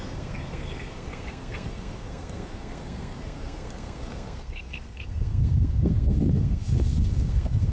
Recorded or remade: remade